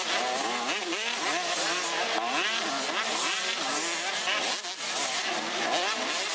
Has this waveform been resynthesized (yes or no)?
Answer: no